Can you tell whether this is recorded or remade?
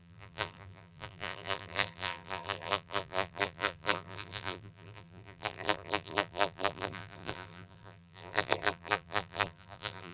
remade